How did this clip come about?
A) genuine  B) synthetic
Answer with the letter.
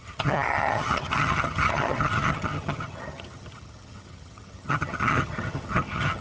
B